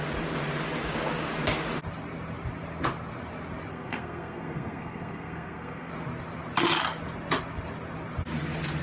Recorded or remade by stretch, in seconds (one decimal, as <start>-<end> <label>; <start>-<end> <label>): 0.0-3.7 recorded; 3.7-5.9 remade; 5.9-8.8 recorded